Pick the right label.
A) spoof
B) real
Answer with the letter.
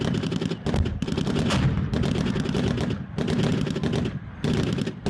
B